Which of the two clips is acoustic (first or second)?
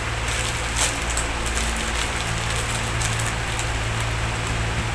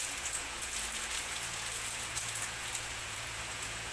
first